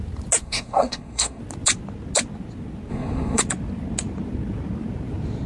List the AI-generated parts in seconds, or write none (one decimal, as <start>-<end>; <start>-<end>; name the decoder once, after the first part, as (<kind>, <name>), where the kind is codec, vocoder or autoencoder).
0.4-1.4 (codec, SNAC); 2.9-3.4